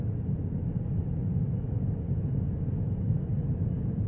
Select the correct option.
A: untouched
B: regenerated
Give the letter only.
A